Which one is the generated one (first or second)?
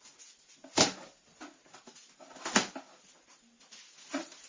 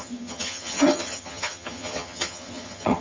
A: second